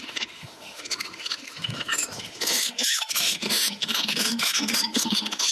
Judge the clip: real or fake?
fake